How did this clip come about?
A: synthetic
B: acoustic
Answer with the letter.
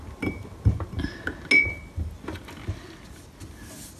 B